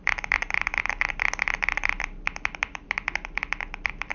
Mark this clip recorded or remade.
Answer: recorded